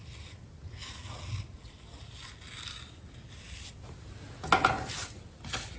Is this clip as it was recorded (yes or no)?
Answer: yes